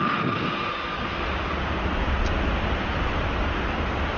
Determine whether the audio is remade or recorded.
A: recorded